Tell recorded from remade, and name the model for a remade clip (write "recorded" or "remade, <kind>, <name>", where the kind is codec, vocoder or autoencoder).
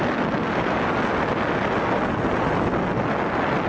recorded